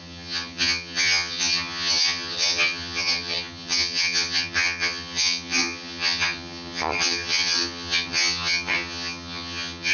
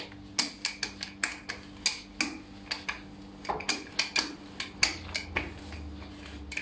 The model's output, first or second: first